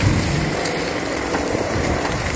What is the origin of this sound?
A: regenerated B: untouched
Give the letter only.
A